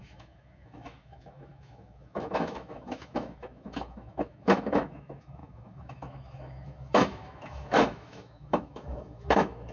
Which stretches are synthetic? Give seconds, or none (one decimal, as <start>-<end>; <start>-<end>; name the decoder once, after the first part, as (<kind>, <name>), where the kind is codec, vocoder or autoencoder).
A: 0.0-9.7 (autoencoder, DAC-VAE)